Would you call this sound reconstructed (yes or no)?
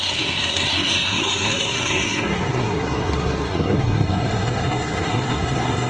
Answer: yes